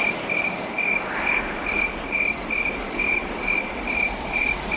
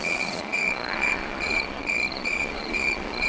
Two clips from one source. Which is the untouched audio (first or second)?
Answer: first